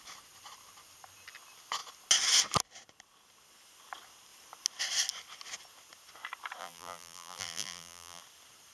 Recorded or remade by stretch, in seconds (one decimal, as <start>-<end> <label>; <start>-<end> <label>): 0.0-6.6 recorded; 6.6-8.2 remade; 8.2-8.7 recorded